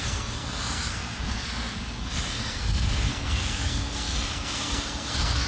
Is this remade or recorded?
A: remade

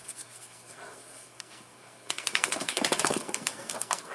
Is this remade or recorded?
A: remade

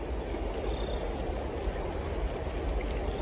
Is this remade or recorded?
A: recorded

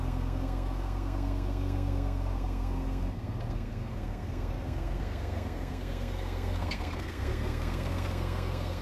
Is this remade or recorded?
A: remade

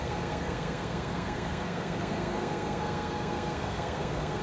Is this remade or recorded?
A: remade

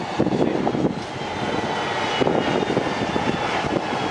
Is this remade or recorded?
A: recorded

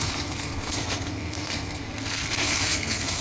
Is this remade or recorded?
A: remade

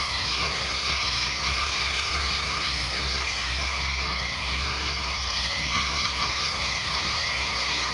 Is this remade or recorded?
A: remade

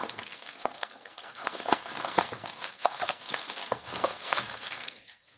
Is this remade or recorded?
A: remade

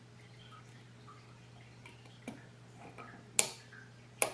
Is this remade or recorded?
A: recorded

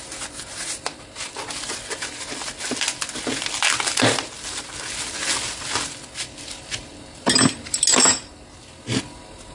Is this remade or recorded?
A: recorded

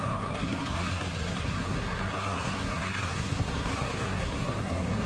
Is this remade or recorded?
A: remade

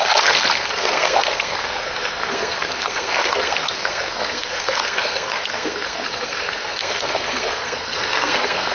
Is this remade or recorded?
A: remade